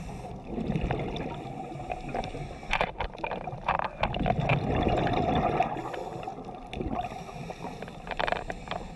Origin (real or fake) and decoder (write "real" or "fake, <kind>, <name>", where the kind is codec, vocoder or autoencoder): real